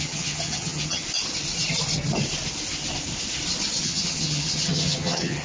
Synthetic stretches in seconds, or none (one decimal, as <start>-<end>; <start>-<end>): 0.0-1.0; 3.8-5.4